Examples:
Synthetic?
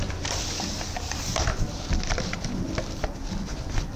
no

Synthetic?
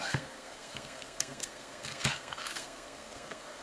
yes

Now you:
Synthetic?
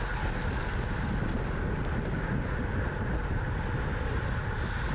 no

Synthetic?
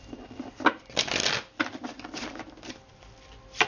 no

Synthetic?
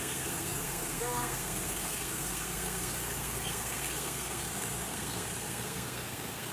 yes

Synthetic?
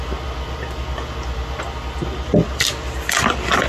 no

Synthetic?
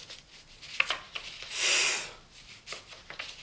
no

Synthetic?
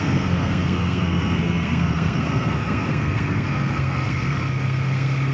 yes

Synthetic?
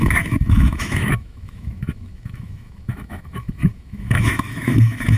yes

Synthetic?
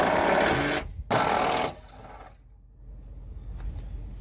no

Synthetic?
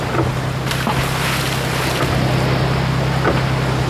no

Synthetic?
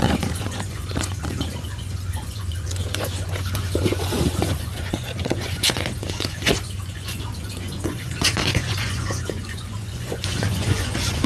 yes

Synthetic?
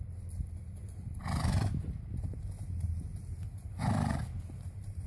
no